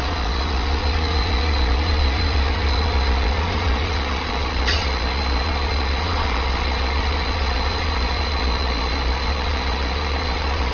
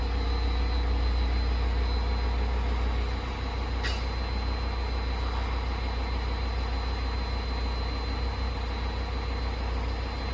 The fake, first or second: first